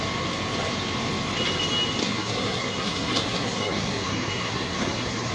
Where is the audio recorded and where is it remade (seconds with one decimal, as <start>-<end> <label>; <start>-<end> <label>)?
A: 0.0-2.0 recorded; 2.0-5.3 remade